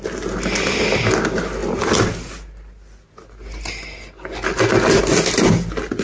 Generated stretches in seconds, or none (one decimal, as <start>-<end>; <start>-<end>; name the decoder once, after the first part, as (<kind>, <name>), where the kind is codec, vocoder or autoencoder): none